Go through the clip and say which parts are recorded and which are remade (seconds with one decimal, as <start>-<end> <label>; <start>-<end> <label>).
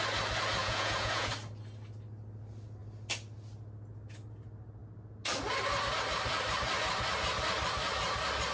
0.0-0.6 recorded; 0.6-1.3 remade; 1.3-8.5 recorded